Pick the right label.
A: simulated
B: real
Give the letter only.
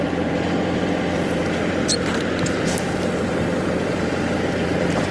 A